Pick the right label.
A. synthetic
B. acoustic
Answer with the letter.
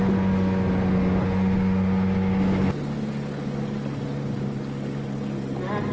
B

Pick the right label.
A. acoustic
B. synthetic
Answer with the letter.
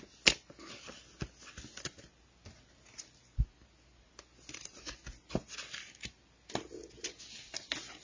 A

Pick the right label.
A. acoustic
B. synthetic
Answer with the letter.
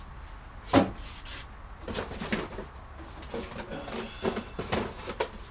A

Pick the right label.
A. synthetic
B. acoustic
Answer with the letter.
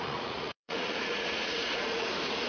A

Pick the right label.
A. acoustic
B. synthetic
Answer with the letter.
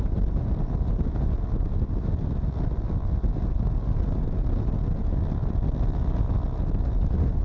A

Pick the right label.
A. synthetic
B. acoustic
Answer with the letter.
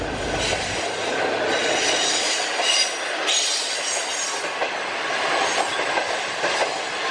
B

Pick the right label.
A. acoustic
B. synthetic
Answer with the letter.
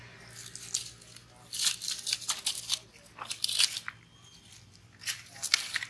A